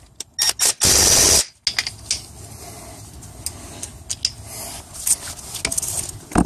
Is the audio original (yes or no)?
yes